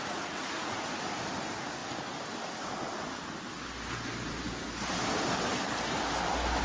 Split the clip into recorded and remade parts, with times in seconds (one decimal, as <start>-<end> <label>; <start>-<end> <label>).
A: 0.0-0.8 remade; 0.8-6.6 recorded